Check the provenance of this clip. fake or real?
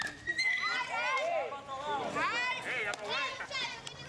real